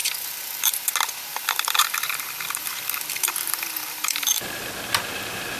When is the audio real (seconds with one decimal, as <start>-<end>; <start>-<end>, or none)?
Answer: 0.9-1.3; 4.7-5.6